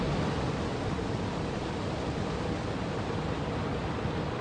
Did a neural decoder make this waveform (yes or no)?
no